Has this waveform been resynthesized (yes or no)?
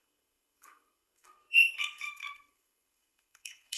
yes